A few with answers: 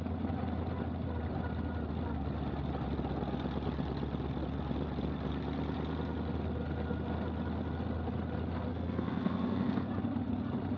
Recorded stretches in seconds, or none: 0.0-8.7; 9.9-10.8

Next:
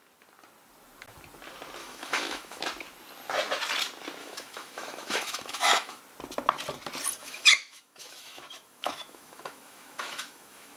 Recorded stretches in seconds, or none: 0.0-1.8; 2.6-4.2; 6.0-7.2

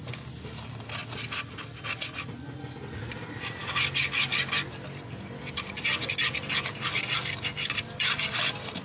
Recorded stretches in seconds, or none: 0.0-8.8

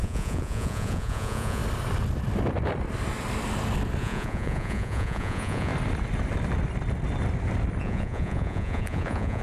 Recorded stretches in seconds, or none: 1.6-4.0; 5.7-7.8

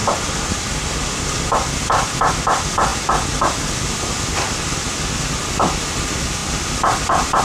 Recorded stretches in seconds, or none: 0.0-7.4

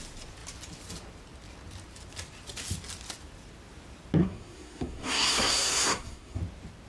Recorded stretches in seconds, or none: 0.0-4.2; 6.4-6.9

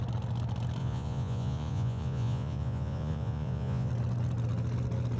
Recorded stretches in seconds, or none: 0.0-0.8; 3.9-5.2

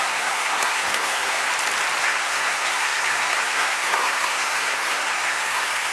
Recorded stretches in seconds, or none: 1.5-2.0